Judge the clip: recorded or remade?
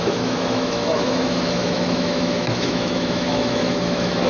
remade